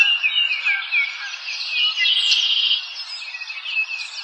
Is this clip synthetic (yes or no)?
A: no